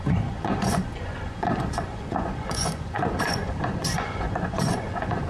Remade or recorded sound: remade